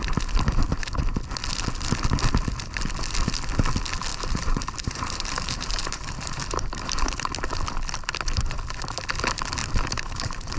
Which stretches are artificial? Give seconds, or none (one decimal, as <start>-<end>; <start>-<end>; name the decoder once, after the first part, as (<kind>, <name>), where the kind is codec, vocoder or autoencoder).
4.1-7.3 (vocoder, BigVGAN v2); 9.6-10.6